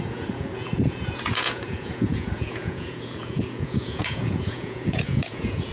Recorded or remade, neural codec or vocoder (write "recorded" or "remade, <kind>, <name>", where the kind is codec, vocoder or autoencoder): remade, vocoder, Vocos